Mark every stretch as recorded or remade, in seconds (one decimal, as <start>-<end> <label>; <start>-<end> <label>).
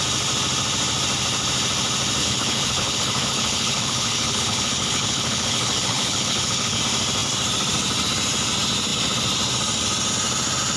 0.0-2.2 recorded; 2.2-6.8 remade; 6.8-10.8 recorded